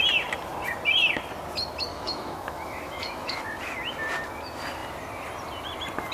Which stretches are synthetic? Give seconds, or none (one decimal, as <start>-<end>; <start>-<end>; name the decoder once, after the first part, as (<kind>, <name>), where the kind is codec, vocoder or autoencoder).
1.9-3.4 (autoencoder, DAC-VAE)